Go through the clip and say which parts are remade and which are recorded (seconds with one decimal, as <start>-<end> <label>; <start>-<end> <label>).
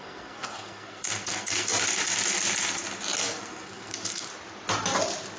0.0-1.7 remade; 1.7-3.2 recorded; 3.2-4.3 remade; 4.3-5.4 recorded